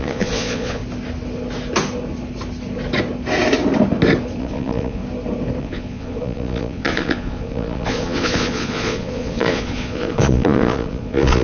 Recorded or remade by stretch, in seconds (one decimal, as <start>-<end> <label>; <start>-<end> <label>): 0.0-0.8 remade; 0.8-4.4 recorded; 4.4-5.0 remade; 5.0-5.6 recorded; 5.6-11.4 remade